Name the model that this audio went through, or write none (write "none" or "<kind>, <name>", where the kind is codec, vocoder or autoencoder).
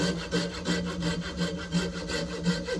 none